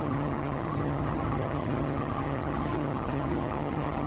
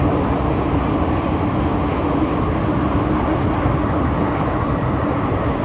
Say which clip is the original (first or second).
second